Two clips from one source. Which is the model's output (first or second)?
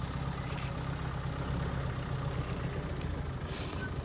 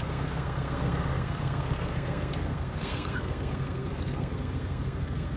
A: second